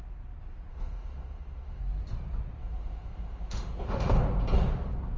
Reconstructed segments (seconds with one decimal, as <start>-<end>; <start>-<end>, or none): 0.7-1.8; 2.6-4.2